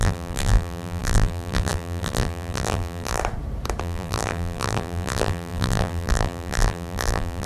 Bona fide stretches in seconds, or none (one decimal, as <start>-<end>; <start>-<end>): 3.2-3.8